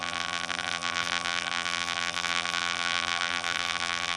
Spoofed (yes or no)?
yes